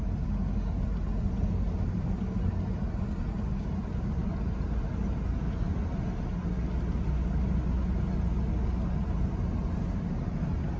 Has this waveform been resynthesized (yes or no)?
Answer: no